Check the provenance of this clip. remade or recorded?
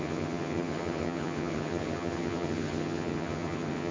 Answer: remade